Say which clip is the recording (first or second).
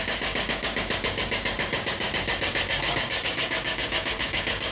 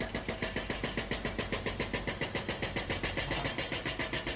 second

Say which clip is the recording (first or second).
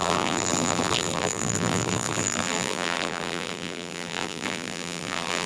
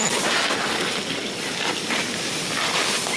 second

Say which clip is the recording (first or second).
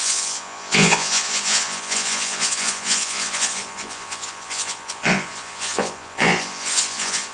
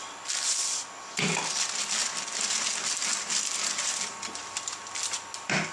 second